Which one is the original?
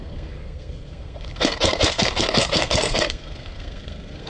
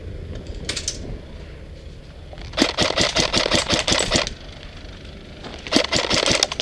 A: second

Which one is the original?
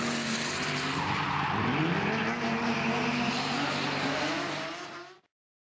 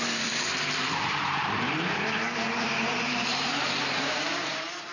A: first